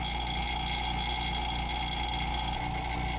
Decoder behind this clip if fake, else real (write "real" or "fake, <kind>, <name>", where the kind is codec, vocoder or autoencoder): real